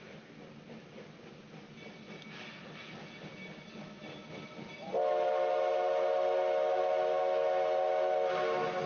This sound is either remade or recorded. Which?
recorded